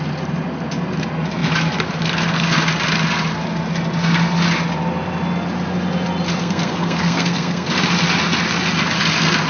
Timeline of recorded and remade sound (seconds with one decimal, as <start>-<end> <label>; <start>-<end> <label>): 0.0-6.4 recorded; 6.4-7.7 remade; 7.7-9.5 recorded